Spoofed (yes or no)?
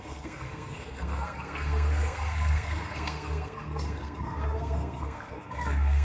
yes